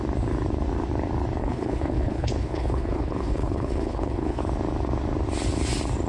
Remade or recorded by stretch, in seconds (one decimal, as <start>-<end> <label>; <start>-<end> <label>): 0.0-1.4 recorded; 1.4-4.4 remade; 4.4-6.1 recorded